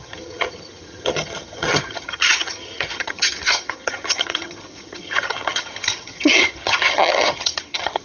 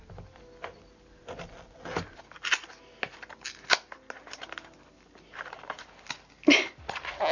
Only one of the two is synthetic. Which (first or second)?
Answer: first